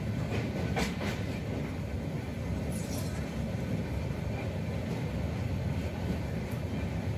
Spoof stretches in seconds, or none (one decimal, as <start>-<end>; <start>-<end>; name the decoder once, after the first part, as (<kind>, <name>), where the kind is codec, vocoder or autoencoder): 5.9-6.5 (vocoder, BigVGAN v2)